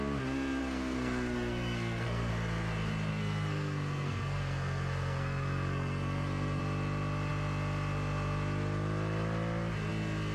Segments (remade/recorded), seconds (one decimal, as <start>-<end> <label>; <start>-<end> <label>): 0.0-0.6 recorded; 0.6-2.3 remade; 2.3-3.1 recorded; 3.1-6.6 remade; 6.6-10.3 recorded